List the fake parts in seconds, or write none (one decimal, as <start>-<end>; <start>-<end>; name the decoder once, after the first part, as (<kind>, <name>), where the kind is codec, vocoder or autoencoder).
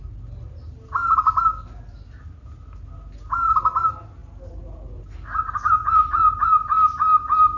none